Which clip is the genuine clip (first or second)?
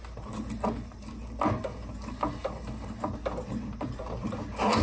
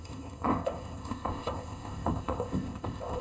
first